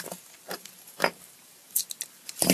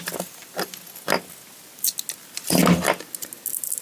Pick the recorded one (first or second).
second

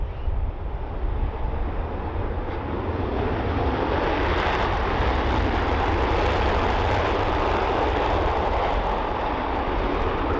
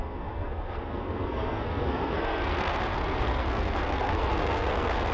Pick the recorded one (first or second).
first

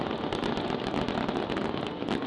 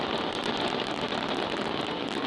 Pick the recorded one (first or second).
first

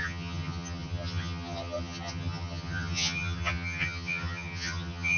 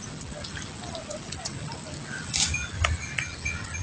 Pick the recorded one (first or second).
second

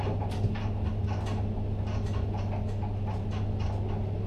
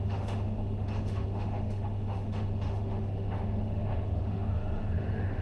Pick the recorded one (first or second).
first